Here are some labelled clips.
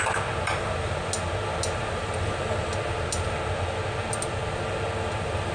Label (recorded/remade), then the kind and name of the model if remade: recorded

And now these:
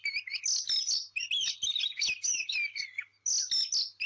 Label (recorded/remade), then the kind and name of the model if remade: recorded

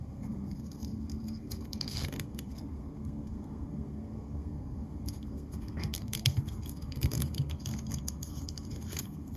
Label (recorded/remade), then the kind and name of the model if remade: remade, codec, SNAC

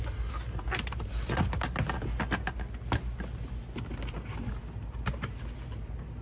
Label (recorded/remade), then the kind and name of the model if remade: recorded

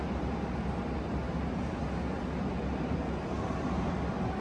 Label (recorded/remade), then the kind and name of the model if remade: recorded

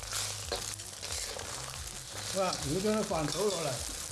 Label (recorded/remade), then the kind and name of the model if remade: recorded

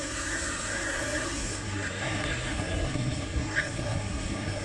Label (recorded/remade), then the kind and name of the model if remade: remade, codec, SNAC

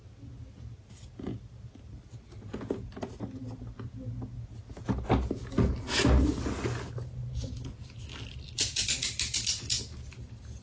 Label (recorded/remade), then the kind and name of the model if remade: recorded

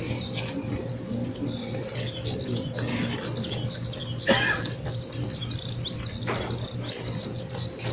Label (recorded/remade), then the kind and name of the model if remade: recorded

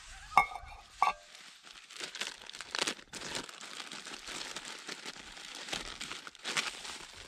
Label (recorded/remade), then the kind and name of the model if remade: recorded